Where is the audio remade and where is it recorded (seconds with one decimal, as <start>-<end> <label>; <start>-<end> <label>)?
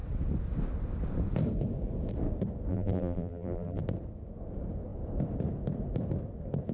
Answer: 0.0-2.7 recorded; 2.7-3.8 remade; 3.8-6.7 recorded